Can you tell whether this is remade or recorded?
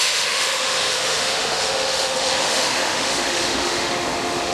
remade